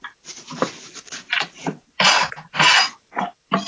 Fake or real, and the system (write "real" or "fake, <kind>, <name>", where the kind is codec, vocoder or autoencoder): fake, vocoder, BigVGAN v2